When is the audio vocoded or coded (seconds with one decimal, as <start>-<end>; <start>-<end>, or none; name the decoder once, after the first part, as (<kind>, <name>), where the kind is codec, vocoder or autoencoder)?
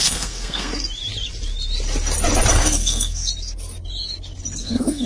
0.0-0.7 (codec, SNAC); 2.5-3.3; 4.6-5.1